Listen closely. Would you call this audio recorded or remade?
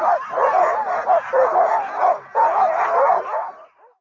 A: recorded